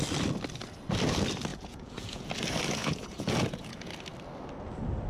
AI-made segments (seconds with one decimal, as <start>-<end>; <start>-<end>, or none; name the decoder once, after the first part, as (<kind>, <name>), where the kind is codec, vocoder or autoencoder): 1.5-2.3 (vocoder, Vocos); 2.8-3.9